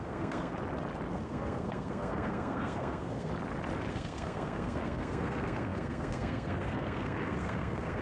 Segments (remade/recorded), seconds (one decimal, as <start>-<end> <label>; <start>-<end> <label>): 0.0-0.5 remade; 0.5-1.1 recorded; 1.1-3.3 remade; 3.3-3.9 recorded; 3.9-8.0 remade